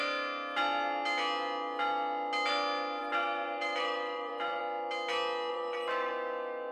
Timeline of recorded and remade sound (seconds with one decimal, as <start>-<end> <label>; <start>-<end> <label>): 0.0-3.0 recorded; 3.0-4.6 remade; 4.6-5.5 recorded; 5.5-6.1 remade; 6.1-6.7 recorded